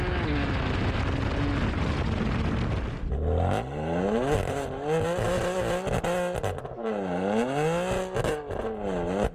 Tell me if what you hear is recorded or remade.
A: recorded